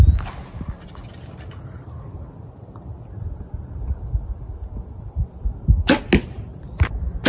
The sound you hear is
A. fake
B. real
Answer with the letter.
B